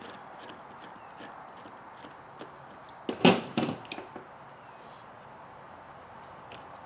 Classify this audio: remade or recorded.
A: recorded